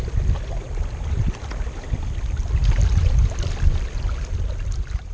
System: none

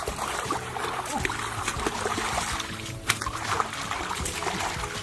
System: none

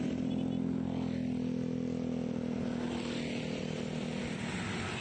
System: none